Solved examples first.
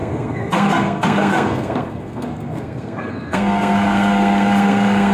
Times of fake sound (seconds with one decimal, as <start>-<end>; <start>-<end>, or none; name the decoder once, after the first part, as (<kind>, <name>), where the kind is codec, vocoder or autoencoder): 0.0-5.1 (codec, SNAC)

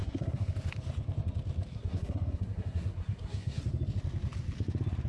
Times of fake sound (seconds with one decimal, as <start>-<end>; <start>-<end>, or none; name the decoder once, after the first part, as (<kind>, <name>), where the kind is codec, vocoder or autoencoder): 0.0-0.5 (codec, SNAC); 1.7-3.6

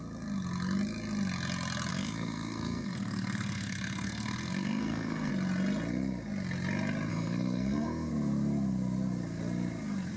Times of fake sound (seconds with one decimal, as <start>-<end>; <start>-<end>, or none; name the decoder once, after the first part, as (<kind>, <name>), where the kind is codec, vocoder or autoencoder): 1.9-5.3 (codec, SNAC); 7.1-8.1